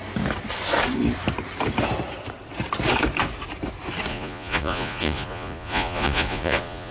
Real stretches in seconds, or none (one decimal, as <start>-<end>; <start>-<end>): 0.0-4.1

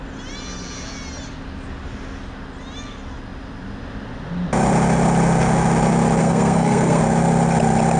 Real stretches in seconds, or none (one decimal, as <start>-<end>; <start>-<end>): 0.0-6.2; 7.0-8.0

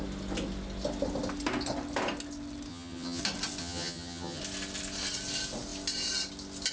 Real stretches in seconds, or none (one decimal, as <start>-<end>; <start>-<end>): 0.0-2.7; 3.2-3.6; 4.4-6.7

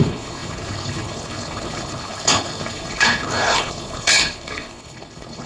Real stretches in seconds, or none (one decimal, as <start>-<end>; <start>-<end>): none

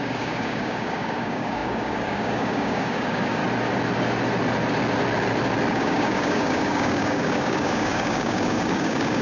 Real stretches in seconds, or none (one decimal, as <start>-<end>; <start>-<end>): 3.4-5.7